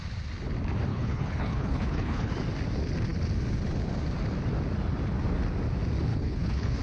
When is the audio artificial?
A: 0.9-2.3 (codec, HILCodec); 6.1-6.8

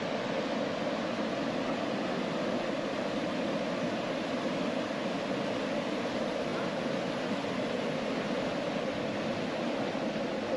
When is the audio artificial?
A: none

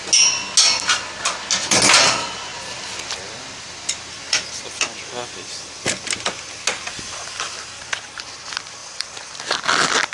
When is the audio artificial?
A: 2.5-5.1 (vocoder, BigVGAN v2); 8.8-9.4

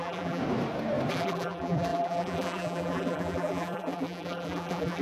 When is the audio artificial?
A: 0.0-0.4 (vocoder, BigVGAN v2); 1.1-5.0

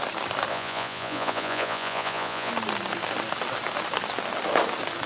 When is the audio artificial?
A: 0.5-2.5 (vocoder, Vocos)

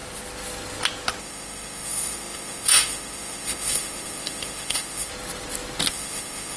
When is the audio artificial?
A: 1.2-5.1 (autoencoder, DAC-VAE); 5.9-6.6

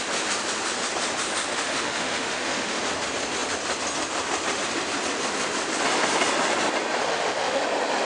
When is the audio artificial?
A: 1.5-2.8 (autoencoder, DAC-VAE); 7.0-7.6

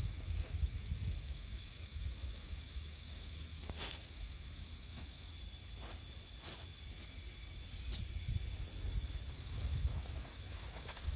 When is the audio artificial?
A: 0.0-5.3 (autoencoder, DAC-VAE); 9.3-11.2